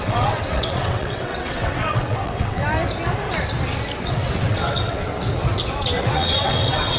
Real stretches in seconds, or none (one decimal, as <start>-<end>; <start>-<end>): 2.6-4.0; 5.1-5.8